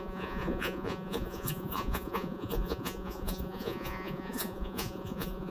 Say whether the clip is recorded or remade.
remade